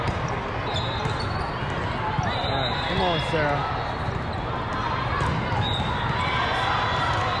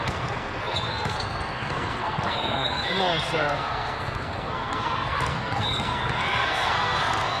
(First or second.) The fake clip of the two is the second